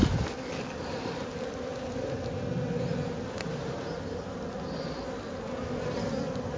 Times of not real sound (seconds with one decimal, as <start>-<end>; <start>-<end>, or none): none